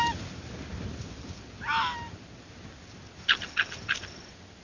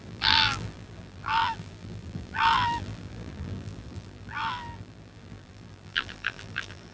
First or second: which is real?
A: first